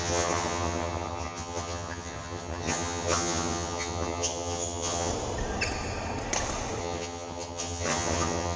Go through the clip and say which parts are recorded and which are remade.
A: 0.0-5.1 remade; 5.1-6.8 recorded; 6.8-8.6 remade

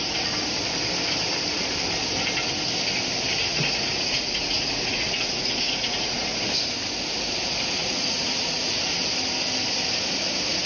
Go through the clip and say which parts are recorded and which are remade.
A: 0.0-3.5 recorded; 3.5-6.4 remade; 6.4-7.8 recorded; 7.8-8.8 remade; 8.8-10.7 recorded

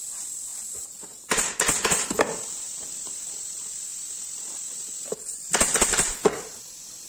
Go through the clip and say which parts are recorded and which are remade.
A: 0.0-0.5 remade; 0.5-2.5 recorded; 2.5-7.1 remade